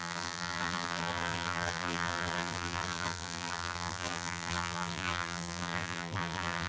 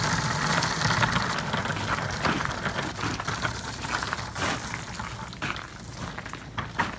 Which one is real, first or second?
second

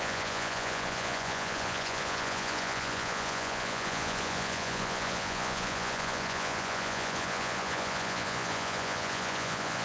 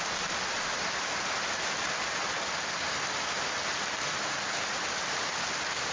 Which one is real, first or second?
second